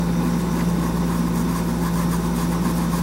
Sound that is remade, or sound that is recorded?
recorded